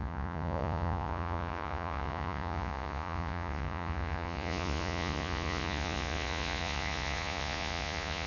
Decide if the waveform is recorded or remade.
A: remade